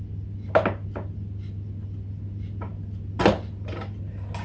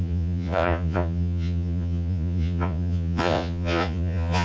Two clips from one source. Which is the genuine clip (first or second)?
first